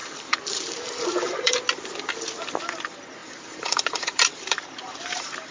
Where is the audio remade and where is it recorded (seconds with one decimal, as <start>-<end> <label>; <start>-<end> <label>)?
0.0-1.6 remade; 1.6-3.2 recorded; 3.2-5.5 remade